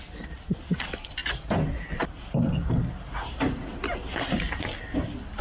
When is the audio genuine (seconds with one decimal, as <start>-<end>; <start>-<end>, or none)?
0.0-5.4